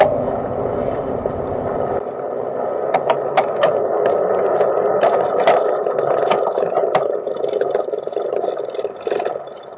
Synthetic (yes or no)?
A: no